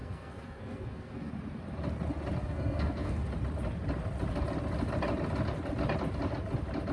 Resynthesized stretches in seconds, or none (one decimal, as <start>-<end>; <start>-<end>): 0.0-1.3; 2.4-3.2